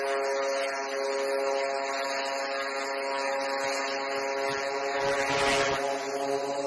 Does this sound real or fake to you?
real